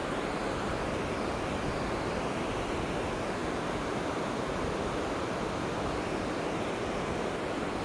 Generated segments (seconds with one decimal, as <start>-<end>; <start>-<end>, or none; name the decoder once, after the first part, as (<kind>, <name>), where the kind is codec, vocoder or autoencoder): none